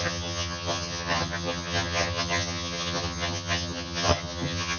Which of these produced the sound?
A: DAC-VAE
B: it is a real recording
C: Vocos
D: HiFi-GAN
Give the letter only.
D